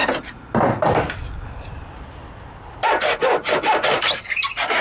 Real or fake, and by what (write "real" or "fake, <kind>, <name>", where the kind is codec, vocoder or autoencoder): real